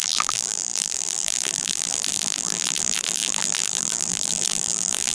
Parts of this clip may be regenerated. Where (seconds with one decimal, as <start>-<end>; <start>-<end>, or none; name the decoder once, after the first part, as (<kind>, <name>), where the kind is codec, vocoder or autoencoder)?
0.0-5.1 (vocoder, BigVGAN v2)